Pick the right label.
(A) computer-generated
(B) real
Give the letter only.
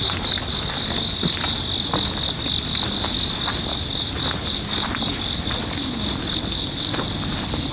B